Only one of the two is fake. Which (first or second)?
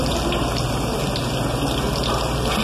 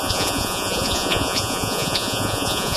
second